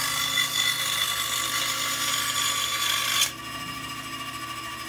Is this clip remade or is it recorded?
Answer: recorded